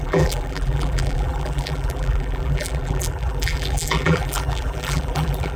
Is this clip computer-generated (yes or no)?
yes